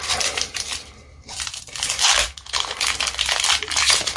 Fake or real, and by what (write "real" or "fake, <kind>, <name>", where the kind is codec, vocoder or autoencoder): real